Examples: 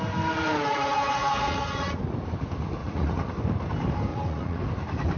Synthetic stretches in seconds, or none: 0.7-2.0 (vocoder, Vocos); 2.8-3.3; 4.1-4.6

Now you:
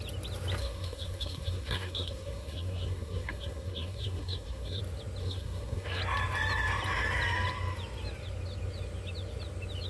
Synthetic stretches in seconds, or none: 0.6-4.8 (codec, SNAC); 5.2-6.0

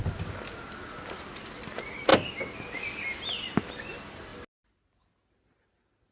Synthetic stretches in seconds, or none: none

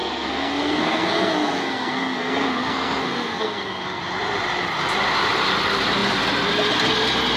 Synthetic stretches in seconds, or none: 0.0-4.0 (codec, SNAC)

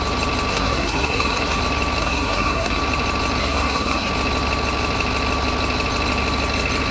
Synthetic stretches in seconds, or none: 0.5-1.6 (codec, SNAC); 2.0-2.8; 3.4-4.1

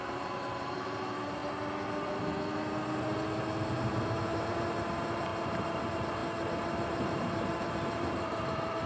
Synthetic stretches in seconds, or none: 0.0-1.4 (vocoder, BigVGAN v2); 4.2-8.9

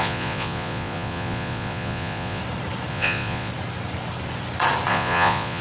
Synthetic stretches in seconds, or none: 0.0-2.4 (vocoder, Vocos); 2.9-3.5; 4.9-5.6

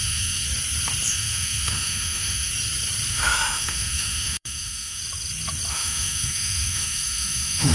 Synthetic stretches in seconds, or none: 0.0-0.4 (autoencoder, DAC-VAE); 1.1-2.5; 3.1-5.0; 5.7-7.7